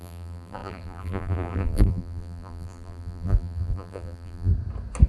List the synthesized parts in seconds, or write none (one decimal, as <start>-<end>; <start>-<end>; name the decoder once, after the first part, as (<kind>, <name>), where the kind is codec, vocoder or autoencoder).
0.0-4.5 (vocoder, BigVGAN v2)